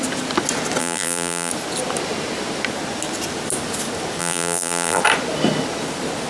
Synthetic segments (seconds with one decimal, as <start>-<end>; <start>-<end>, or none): 0.8-1.5; 4.2-5.0